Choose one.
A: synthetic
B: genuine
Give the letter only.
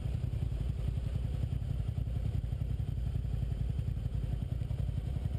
A